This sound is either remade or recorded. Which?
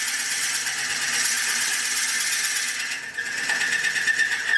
recorded